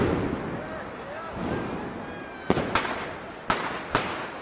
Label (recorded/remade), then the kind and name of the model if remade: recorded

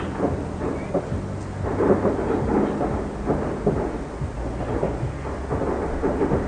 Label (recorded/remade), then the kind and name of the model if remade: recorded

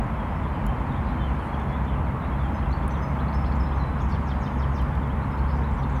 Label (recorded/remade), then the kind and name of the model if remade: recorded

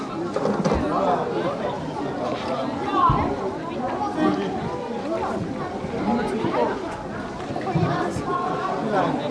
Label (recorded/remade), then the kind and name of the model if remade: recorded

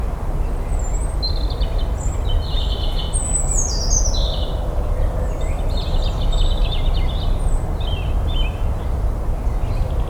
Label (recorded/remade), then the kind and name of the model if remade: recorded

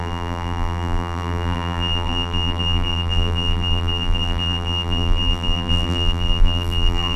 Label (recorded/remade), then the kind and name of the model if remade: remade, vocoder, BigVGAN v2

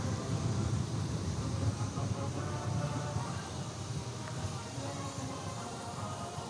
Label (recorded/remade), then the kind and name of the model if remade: remade, vocoder, BigVGAN v2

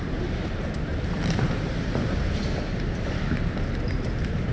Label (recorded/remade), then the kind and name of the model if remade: remade, vocoder, BigVGAN v2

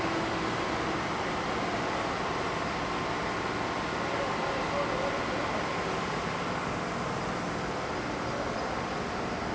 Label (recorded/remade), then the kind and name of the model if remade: recorded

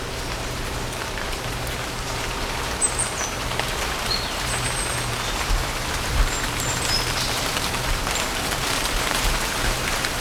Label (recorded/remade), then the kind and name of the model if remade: remade, vocoder, BigVGAN v2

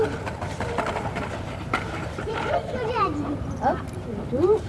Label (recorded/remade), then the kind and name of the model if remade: remade, vocoder, BigVGAN v2